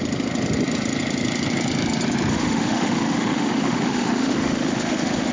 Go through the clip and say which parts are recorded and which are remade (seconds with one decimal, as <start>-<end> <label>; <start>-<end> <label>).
0.0-2.3 recorded; 2.3-5.3 remade